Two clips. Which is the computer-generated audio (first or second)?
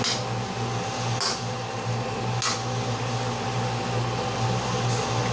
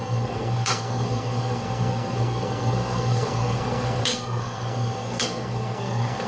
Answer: second